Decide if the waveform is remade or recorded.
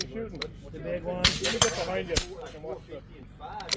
recorded